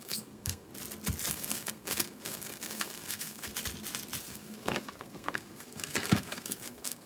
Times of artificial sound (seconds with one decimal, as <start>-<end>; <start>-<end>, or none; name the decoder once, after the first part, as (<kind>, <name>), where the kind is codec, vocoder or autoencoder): 0.0-0.7 (codec, SNAC); 1.3-3.5; 4.2-7.1